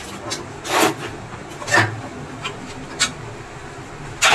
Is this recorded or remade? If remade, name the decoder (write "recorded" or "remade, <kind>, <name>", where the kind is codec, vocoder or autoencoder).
recorded